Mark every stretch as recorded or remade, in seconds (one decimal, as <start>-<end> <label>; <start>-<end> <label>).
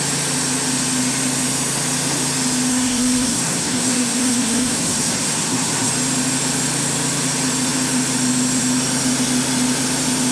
0.0-2.7 recorded; 2.7-5.9 remade; 5.9-10.3 recorded